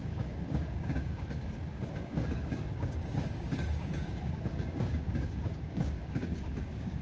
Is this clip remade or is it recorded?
remade